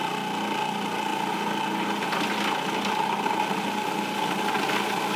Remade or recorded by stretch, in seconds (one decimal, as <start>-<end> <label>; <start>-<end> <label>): 0.0-5.2 recorded

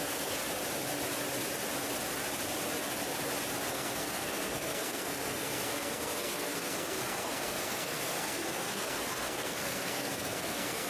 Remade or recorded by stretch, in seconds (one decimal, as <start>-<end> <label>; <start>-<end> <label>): 0.0-0.4 remade; 0.4-3.7 recorded; 3.7-10.9 remade

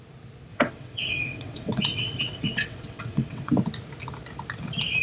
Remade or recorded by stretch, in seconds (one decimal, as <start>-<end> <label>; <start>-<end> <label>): 0.0-0.5 recorded; 0.5-3.5 remade; 3.5-5.0 recorded

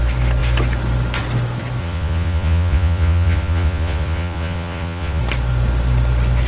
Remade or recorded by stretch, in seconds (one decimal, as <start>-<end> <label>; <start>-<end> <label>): 0.0-1.8 recorded; 1.8-5.2 remade; 5.2-6.5 recorded

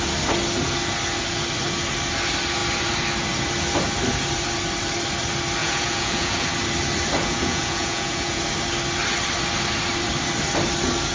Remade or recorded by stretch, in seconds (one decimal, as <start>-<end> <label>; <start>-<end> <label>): 0.0-5.6 recorded; 5.6-6.5 remade; 6.5-7.2 recorded; 7.2-8.4 remade; 8.4-11.1 recorded

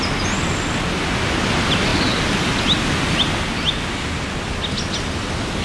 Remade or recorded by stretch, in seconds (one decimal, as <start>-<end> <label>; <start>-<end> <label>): 0.0-5.6 recorded